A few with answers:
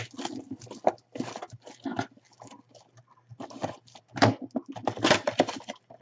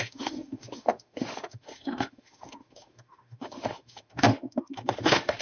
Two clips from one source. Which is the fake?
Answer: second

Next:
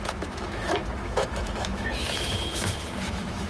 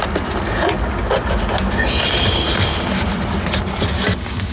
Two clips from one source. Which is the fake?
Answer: first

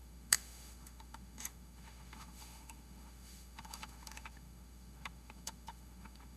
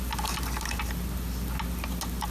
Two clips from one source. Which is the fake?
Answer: first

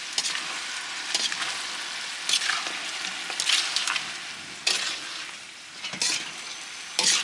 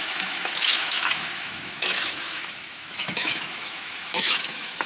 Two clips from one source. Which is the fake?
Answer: second